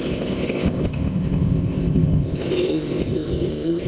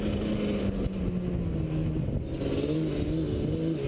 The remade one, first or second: first